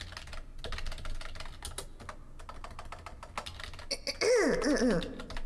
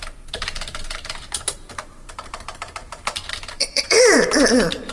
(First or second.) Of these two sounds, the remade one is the second